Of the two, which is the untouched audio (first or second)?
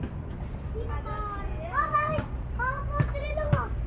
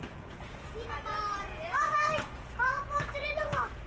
first